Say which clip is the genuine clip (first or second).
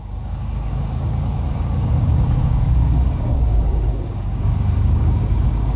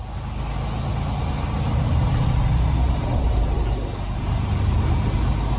second